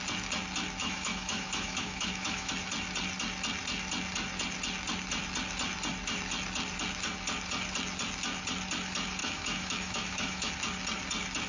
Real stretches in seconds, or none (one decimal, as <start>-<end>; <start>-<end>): 0.0-0.8; 2.5-9.2; 10.5-11.5